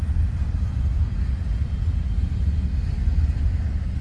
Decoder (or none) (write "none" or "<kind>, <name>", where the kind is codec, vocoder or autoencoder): none